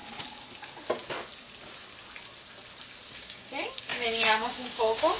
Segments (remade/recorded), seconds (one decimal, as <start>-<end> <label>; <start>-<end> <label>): 0.0-3.1 recorded; 3.1-5.2 remade